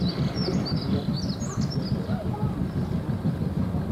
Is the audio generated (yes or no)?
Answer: no